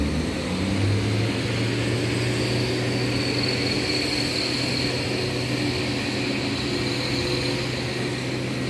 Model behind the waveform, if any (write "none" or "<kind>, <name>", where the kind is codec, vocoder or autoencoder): none